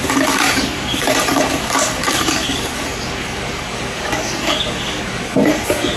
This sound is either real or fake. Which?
fake